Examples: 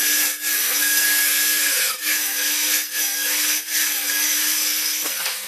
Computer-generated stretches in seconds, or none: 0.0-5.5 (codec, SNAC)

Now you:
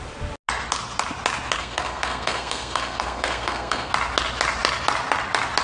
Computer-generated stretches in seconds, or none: 1.6-3.9 (codec, SNAC)

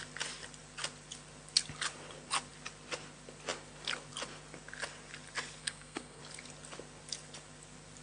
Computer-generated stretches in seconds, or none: 5.6-6.2 (codec, SNAC)

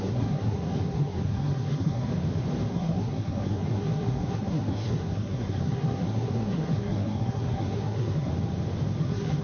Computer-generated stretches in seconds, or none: 0.0-2.1 (codec, SNAC); 2.7-8.3; 9.0-9.4

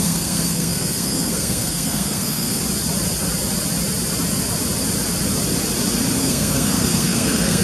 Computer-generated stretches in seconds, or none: 0.0-2.6 (codec, SNAC); 6.2-7.6

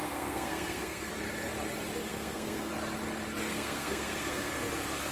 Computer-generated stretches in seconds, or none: 0.0-1.1 (codec, SNAC); 2.1-2.7; 3.4-4.5

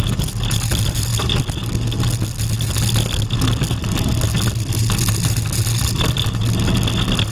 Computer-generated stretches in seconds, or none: none